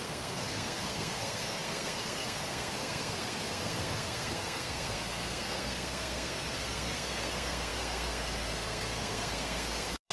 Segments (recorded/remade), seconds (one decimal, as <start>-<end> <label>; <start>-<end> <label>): 0.0-10.1 remade